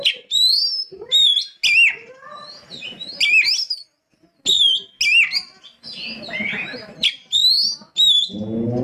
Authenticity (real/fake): real